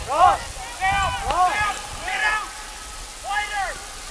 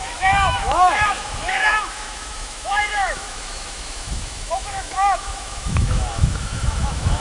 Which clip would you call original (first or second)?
first